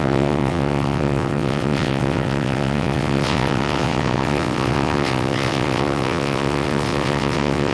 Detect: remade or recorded remade